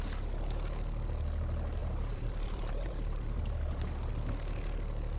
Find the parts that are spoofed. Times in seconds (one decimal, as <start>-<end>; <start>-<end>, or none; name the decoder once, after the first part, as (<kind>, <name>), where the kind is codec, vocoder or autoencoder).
1.8-4.1 (vocoder, BigVGAN v2)